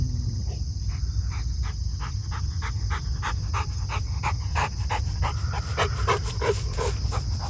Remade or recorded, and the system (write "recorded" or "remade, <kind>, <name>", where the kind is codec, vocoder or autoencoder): recorded